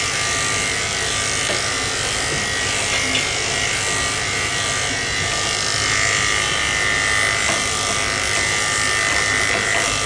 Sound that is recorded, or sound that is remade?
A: recorded